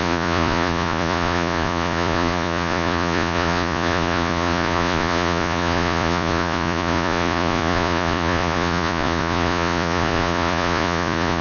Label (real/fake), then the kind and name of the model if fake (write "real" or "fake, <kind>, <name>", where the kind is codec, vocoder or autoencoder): fake, vocoder, Vocos